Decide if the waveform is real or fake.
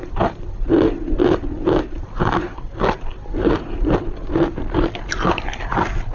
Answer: real